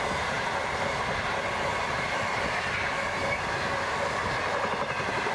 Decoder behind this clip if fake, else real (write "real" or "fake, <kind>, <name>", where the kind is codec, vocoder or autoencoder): real